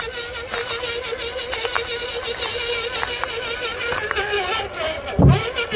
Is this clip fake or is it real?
real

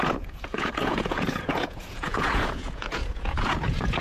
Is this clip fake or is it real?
fake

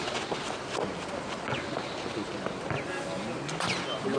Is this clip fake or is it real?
real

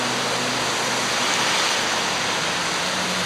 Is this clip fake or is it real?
real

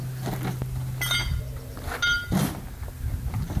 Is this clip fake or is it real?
real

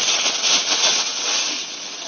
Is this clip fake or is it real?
fake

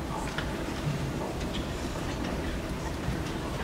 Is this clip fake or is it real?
fake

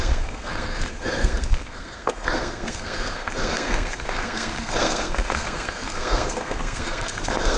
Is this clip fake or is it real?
fake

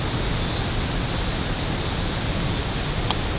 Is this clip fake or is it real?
real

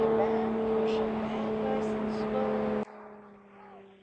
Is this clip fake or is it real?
real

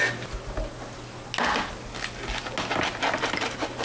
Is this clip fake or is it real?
real